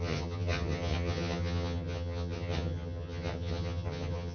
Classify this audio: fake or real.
fake